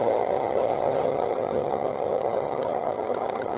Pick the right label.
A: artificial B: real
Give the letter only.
A